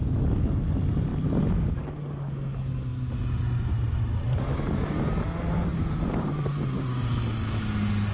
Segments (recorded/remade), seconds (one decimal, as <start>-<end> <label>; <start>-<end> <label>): 0.0-5.7 recorded; 5.7-7.2 remade; 7.2-8.1 recorded